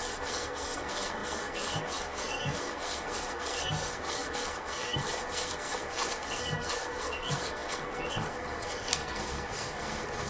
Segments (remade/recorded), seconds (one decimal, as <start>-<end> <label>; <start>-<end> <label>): 0.0-10.3 remade